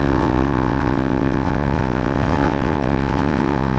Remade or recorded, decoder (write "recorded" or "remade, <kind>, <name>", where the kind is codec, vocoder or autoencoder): remade, vocoder, WaveNeXt